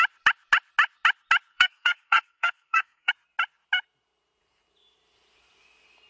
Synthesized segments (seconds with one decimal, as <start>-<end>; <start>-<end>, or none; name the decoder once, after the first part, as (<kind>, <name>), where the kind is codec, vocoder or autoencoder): 1.5-3.1 (codec, SNAC)